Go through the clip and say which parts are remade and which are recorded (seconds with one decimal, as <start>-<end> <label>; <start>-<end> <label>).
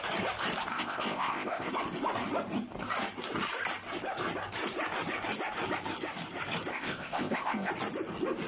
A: 0.0-0.7 recorded; 0.7-1.7 remade; 1.7-6.7 recorded; 6.7-7.7 remade; 7.7-8.5 recorded